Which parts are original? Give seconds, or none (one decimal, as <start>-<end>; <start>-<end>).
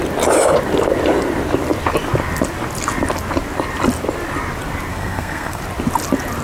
0.0-4.9; 5.6-6.4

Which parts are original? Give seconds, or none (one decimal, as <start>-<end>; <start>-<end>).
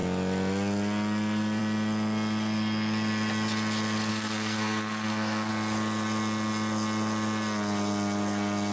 0.0-4.1; 5.5-8.7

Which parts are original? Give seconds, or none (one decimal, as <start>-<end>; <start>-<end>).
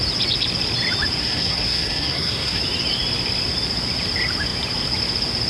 0.0-1.2; 2.6-5.5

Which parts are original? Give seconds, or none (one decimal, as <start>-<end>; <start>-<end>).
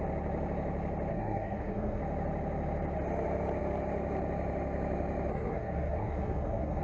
0.0-1.1; 2.0-5.3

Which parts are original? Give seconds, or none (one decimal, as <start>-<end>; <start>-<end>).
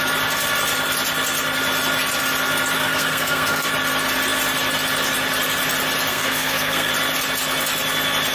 0.0-2.8; 3.7-6.1; 6.9-8.3